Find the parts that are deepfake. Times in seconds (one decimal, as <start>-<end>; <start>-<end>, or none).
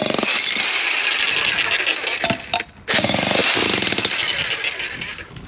none